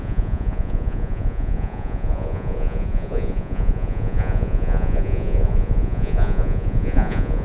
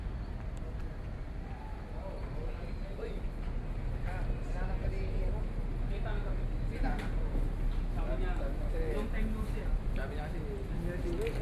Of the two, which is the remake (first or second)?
first